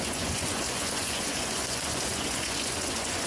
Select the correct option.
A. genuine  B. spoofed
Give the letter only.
B